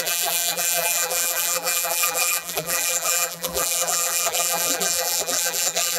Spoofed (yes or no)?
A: yes